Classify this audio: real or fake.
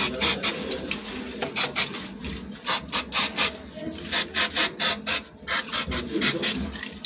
real